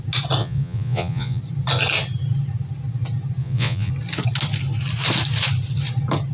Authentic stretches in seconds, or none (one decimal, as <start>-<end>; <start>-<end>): 0.0-0.4; 1.4-3.4; 3.9-6.3